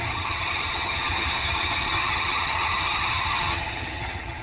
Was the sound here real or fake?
fake